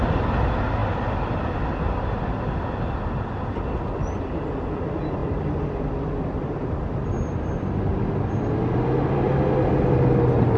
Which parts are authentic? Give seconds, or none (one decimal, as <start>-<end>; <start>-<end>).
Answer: 0.0-5.2; 7.8-10.6